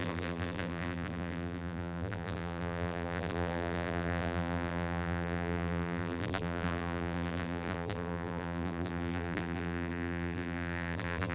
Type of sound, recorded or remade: remade